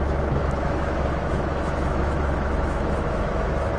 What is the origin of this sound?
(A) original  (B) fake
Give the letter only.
B